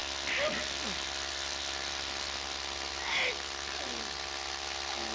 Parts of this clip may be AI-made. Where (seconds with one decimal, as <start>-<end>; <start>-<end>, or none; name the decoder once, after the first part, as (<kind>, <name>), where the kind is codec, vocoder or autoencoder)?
none